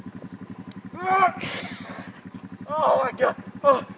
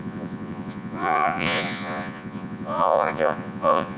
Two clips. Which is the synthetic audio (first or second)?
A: second